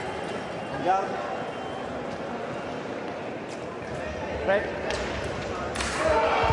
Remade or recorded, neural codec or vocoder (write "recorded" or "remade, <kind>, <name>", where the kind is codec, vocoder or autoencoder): recorded